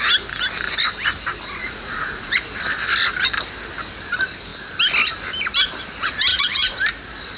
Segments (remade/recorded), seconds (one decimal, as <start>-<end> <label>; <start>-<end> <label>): 0.0-1.6 recorded; 1.6-2.4 remade; 2.4-6.3 recorded; 6.3-6.8 remade; 6.8-7.4 recorded

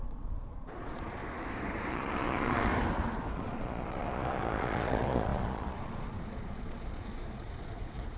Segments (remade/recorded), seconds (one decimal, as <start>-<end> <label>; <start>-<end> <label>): 0.0-1.2 remade; 1.2-1.9 recorded; 1.9-2.7 remade; 2.7-3.3 recorded; 3.3-8.2 remade

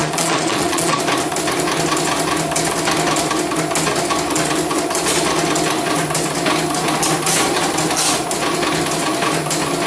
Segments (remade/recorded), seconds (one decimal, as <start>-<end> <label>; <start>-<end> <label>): 0.0-1.0 remade; 1.0-9.9 recorded